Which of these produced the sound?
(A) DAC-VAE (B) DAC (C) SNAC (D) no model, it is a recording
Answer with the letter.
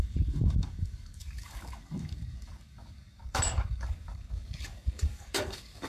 B